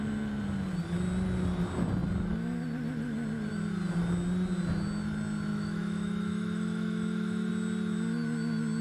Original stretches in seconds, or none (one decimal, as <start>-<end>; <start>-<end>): 0.0-5.5; 7.5-8.8